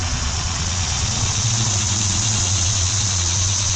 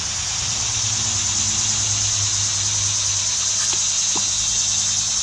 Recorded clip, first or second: second